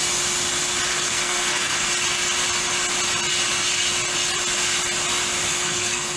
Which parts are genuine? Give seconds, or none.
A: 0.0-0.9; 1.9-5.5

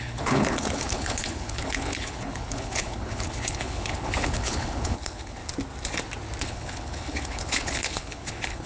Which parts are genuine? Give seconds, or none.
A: 5.4-6.4

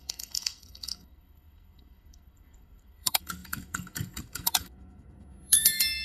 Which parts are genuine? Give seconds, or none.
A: none

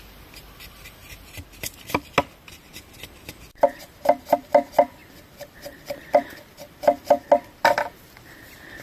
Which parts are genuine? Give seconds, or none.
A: 0.0-5.0; 6.5-8.8

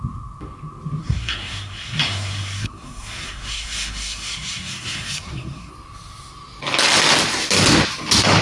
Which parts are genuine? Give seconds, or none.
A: 0.0-1.0; 5.7-8.4

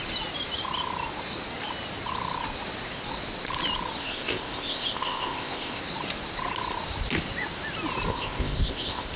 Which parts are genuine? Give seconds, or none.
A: 0.0-4.0; 5.8-8.1